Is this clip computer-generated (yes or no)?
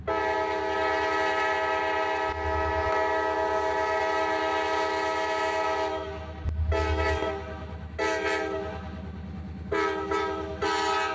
no